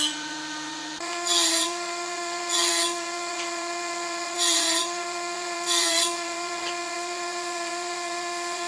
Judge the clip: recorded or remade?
remade